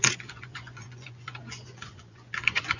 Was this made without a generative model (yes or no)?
no